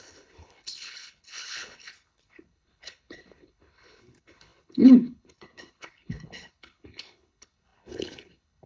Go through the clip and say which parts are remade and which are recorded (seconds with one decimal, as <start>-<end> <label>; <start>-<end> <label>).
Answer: 0.0-8.7 remade

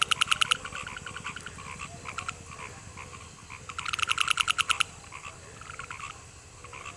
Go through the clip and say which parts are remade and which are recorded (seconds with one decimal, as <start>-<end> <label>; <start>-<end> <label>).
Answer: 0.0-7.0 recorded